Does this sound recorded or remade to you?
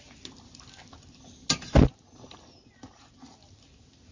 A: recorded